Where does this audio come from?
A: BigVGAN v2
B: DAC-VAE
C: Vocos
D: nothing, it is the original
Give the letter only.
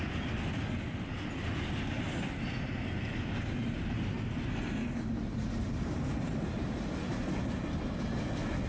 D